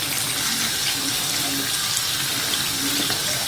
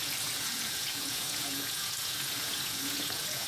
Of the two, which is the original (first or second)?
first